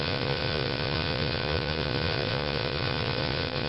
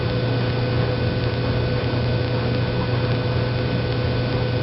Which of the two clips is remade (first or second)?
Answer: first